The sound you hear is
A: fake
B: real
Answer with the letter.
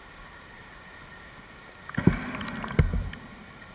A